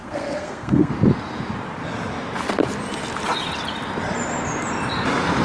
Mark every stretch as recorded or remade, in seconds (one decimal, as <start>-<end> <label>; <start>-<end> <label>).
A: 0.0-0.9 remade; 0.9-5.4 recorded